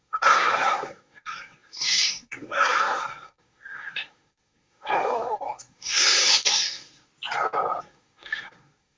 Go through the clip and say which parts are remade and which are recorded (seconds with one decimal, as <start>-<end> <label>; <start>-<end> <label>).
0.0-7.1 remade; 7.1-7.8 recorded; 7.8-9.0 remade